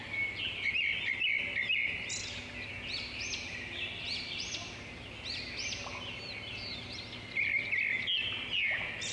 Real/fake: real